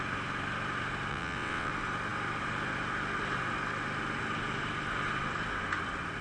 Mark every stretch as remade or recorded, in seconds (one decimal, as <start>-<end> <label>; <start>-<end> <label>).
0.0-1.1 recorded; 1.1-1.7 remade; 1.7-6.2 recorded